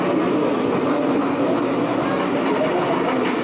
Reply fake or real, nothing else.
real